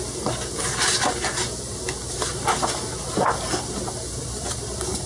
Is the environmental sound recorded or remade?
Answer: recorded